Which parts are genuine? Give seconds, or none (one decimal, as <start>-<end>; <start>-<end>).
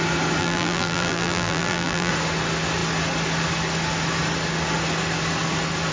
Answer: 0.0-0.4; 2.1-5.9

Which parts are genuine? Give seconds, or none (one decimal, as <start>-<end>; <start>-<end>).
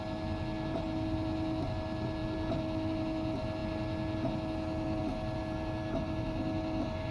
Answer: 0.0-7.1